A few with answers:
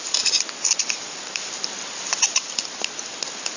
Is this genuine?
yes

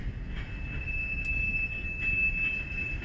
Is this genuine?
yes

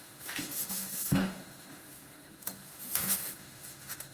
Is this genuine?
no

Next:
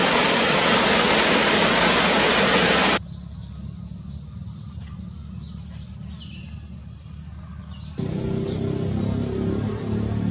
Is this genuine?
yes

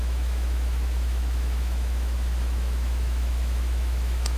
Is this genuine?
no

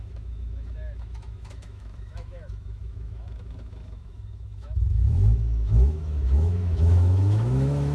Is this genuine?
no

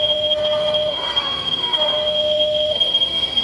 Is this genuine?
no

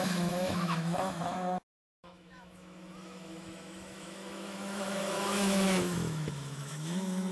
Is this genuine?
no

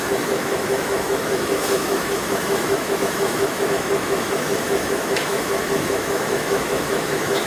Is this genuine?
no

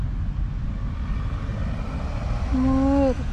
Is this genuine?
yes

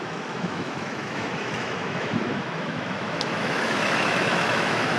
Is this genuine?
no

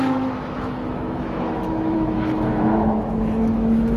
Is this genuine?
no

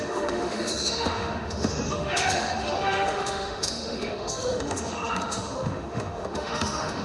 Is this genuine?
no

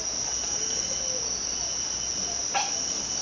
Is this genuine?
yes